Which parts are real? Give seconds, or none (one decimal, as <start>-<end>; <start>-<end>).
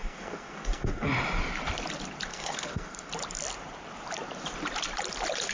1.1-2.3; 3.1-5.5